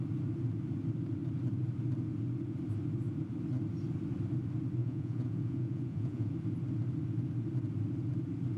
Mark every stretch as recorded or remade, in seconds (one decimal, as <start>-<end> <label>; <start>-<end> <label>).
0.0-4.8 recorded; 4.8-6.3 remade; 6.3-8.6 recorded